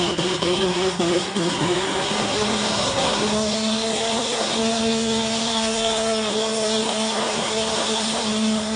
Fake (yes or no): yes